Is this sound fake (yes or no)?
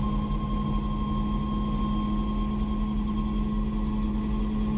no